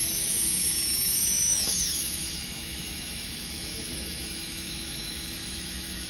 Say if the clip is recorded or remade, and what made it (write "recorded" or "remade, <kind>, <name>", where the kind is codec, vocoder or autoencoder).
remade, autoencoder, DAC-VAE